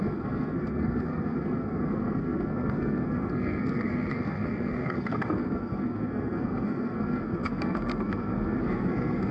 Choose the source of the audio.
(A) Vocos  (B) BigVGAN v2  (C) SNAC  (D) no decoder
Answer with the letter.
C